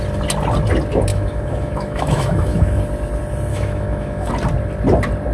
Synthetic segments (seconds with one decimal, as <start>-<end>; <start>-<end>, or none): 1.1-2.8; 3.5-4.3